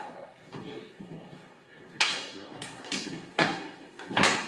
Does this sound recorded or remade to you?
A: remade